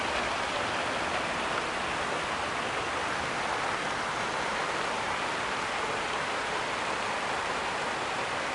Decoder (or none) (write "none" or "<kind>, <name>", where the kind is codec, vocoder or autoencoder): none